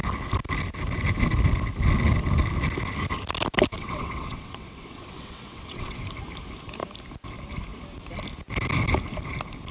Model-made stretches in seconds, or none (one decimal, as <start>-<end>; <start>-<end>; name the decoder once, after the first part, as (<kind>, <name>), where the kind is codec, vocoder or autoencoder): 3.8-6.0 (vocoder, WaveNeXt)

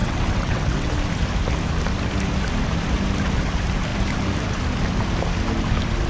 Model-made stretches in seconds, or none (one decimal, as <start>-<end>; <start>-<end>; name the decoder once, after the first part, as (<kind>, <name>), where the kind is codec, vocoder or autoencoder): 0.0-0.9 (vocoder, WaveNeXt)

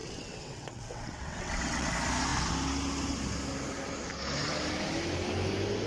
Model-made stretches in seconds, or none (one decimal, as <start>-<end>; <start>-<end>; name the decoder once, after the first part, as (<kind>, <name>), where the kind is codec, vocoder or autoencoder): 0.0-1.9 (vocoder, WaveNeXt)

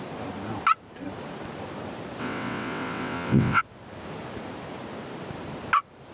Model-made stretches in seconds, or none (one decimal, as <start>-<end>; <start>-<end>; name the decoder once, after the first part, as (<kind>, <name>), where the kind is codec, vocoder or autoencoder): 2.2-3.6 (vocoder, WaveNeXt)

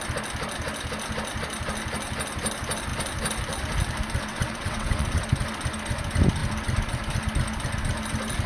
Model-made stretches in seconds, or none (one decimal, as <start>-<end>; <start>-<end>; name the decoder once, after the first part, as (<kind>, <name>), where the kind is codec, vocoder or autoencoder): 4.3-5.2 (vocoder, WaveNeXt)

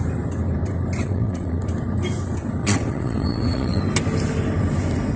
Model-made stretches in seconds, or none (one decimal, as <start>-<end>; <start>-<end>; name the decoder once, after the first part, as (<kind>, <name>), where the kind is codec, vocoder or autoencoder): 1.0-1.6 (vocoder, WaveNeXt); 2.6-3.8

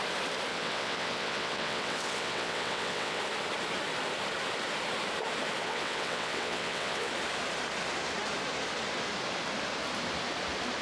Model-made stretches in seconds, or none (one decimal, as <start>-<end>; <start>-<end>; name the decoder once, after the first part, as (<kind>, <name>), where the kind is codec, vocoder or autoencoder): 0.5-3.2 (vocoder, WaveNeXt); 5.6-7.1